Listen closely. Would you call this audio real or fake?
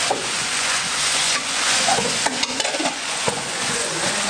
fake